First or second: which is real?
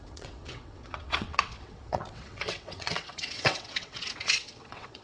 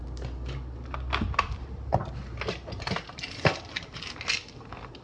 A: second